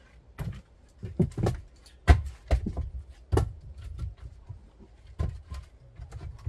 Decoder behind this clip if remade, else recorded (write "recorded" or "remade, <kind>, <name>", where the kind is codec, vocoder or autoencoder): recorded